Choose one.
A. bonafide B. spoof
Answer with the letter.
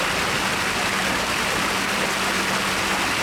A